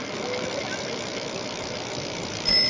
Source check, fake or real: real